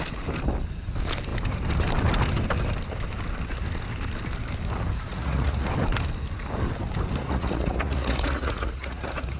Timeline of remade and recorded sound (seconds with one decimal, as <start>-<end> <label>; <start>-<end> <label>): 0.0-5.1 recorded; 5.1-5.7 remade; 5.7-7.2 recorded; 7.2-9.4 remade